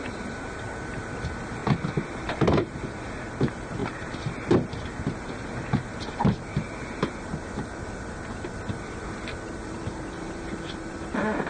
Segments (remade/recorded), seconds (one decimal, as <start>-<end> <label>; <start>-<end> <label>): 0.0-1.6 remade; 1.6-2.1 recorded; 2.1-11.5 remade